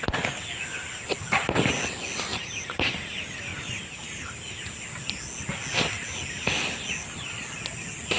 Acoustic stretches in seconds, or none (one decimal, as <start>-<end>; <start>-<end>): 0.0-2.3; 2.9-3.5; 4.4-8.2